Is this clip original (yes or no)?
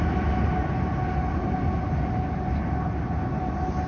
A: yes